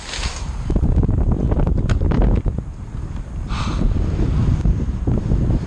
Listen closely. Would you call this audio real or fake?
real